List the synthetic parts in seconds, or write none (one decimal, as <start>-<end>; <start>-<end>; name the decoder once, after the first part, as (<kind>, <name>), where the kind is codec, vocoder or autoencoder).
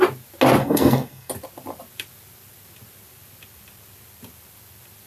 0.6-1.3 (codec, SNAC)